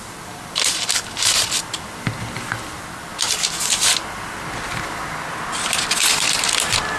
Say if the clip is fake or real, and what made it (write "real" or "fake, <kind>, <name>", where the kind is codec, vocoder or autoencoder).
real